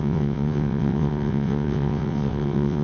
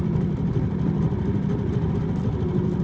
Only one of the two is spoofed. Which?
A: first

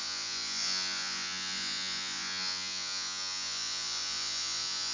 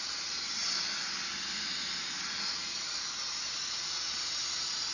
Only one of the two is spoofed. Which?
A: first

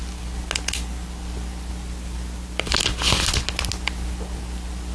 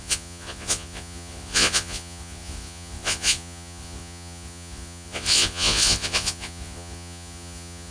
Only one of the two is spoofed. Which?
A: second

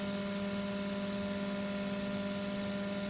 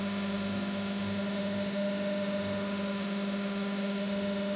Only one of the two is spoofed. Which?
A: second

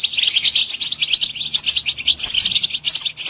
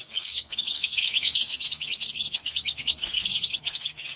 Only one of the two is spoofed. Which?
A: second